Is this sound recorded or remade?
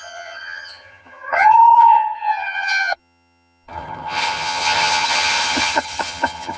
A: remade